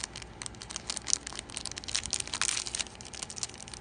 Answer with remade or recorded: recorded